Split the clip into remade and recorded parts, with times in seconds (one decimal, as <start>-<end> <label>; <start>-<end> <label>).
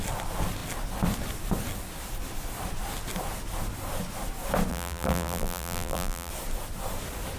0.0-4.7 recorded; 4.7-6.3 remade; 6.3-7.4 recorded